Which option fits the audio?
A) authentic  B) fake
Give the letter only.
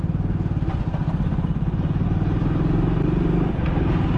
A